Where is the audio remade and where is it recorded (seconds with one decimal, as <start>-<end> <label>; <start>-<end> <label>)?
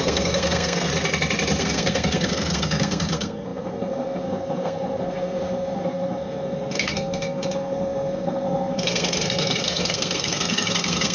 0.0-0.9 remade; 0.9-1.6 recorded; 1.6-11.1 remade